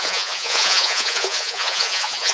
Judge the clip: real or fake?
fake